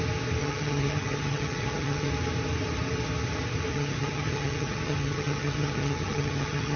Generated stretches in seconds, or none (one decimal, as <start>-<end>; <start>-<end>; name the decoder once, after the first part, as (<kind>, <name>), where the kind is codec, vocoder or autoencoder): 0.4-2.1 (vocoder, HiFi-GAN); 3.7-6.8